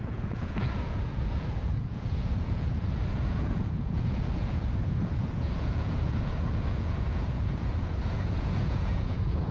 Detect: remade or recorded remade